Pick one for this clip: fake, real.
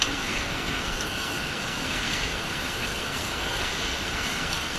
fake